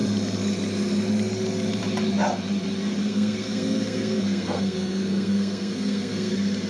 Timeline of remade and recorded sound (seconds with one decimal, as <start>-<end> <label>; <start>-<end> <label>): 0.0-3.0 recorded; 3.0-6.3 remade; 6.3-6.7 recorded